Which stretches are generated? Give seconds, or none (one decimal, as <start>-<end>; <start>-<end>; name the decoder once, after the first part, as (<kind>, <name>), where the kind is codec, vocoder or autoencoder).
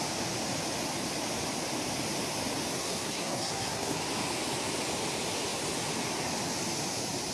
2.7-4.0 (codec, SNAC)